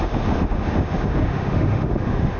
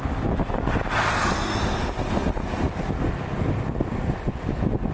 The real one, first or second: second